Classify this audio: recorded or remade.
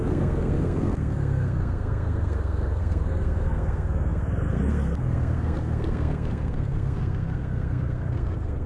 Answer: remade